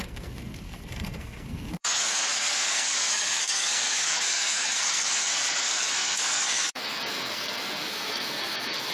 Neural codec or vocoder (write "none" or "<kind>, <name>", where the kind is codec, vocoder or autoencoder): codec, SNAC